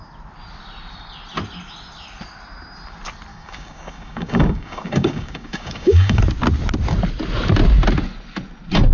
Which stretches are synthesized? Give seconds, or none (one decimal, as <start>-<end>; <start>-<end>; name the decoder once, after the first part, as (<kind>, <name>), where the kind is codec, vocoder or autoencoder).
3.3-6.2 (codec, DAC)